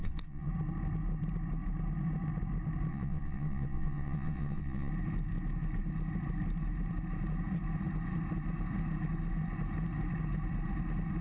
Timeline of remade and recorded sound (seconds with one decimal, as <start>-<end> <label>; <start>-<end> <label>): 0.0-0.5 remade; 0.5-2.9 recorded; 2.9-4.9 remade; 4.9-11.2 recorded